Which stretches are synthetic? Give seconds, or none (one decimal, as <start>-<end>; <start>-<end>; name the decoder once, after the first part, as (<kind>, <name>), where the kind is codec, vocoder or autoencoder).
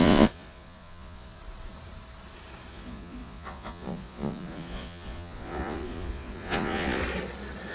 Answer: 0.0-1.4 (vocoder, Vocos); 2.7-7.0